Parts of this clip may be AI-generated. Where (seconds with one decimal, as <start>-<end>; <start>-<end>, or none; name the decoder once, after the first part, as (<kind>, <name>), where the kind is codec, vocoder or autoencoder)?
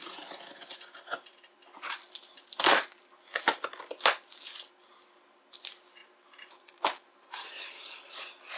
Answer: 6.0-7.7 (vocoder, BigVGAN v2)